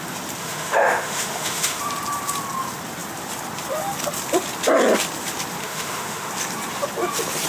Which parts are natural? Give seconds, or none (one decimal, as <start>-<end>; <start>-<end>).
0.0-0.4; 1.8-5.6; 6.3-7.5